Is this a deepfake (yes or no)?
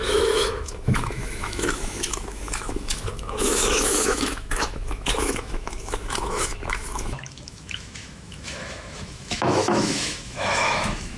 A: yes